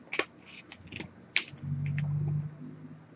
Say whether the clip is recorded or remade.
recorded